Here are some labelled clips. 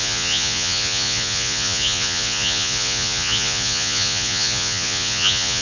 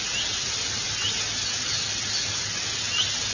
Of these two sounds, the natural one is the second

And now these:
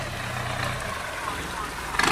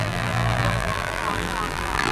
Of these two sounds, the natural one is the first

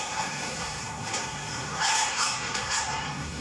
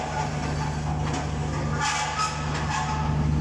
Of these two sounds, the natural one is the second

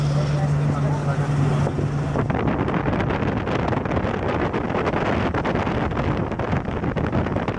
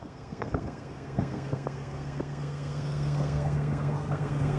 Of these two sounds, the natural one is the first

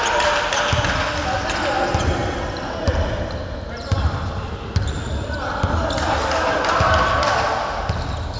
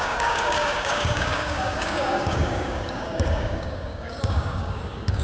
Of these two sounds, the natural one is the first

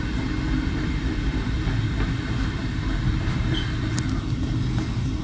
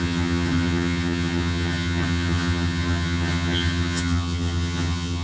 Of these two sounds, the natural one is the first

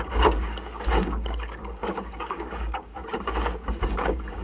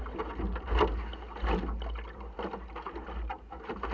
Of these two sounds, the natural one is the second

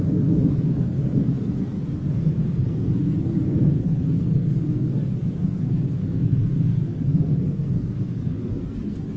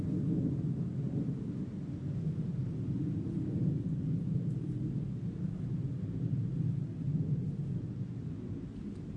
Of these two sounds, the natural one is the second